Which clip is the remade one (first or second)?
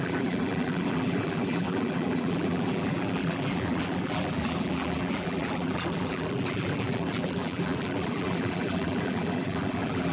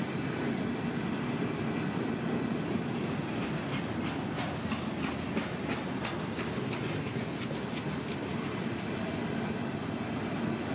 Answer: first